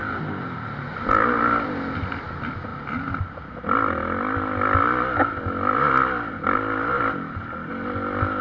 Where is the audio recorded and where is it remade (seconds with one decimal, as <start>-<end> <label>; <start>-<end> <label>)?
0.0-8.4 recorded